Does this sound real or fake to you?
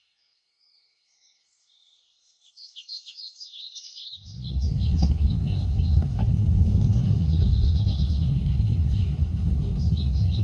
fake